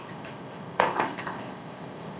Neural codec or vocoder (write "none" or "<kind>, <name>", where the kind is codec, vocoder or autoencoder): codec, ZipCodec